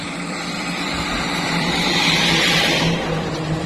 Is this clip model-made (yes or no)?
yes